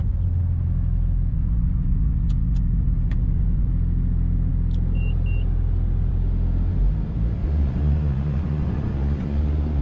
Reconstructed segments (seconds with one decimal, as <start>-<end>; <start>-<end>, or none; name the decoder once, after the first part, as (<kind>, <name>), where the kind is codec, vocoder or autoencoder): 1.3-3.7 (vocoder, Vocos); 7.4-9.8

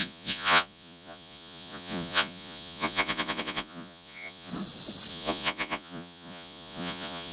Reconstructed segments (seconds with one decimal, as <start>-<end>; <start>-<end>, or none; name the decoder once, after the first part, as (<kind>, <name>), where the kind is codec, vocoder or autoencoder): 0.0-4.5 (vocoder, Vocos); 5.1-7.3